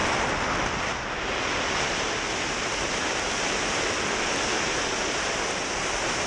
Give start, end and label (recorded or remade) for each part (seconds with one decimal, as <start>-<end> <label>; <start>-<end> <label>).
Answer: 0.0-6.3 recorded